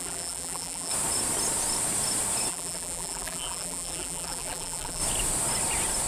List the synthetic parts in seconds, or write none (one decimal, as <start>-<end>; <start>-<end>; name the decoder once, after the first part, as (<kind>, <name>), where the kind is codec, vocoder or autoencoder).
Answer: 0.0-0.9 (vocoder, BigVGAN v2); 2.5-5.0